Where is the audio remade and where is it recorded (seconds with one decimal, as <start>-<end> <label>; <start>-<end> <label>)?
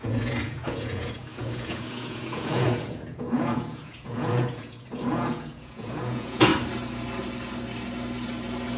0.0-6.5 remade; 6.5-8.8 recorded